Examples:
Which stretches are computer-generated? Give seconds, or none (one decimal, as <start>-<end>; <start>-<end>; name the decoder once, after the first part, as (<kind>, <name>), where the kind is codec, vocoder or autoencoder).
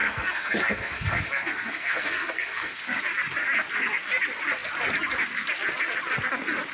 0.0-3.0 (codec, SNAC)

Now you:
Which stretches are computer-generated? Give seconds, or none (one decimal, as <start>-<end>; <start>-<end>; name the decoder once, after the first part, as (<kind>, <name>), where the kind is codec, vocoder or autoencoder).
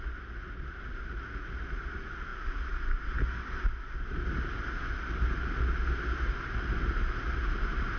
none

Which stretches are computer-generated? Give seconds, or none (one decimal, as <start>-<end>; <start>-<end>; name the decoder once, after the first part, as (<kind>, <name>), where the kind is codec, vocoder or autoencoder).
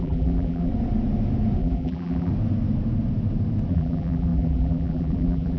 0.0-0.7 (vocoder, BigVGAN v2); 1.6-2.3; 3.7-5.6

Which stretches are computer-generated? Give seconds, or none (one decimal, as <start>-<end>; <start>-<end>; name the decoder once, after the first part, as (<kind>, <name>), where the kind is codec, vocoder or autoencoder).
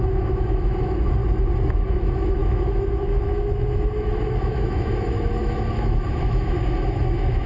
0.0-1.2 (autoencoder, DAC-VAE); 1.7-7.5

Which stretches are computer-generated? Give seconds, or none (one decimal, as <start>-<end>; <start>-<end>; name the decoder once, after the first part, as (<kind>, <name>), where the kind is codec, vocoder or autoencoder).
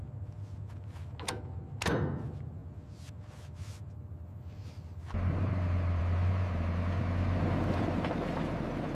none